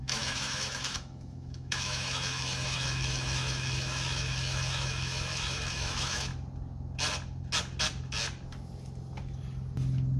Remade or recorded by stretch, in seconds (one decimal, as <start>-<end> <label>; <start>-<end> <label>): 0.0-6.3 remade; 6.3-10.2 recorded